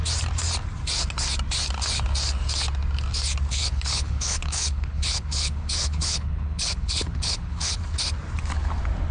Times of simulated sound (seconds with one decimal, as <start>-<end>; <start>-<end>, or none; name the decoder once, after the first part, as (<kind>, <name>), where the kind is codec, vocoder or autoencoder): 3.5-7.8 (codec, HILCodec)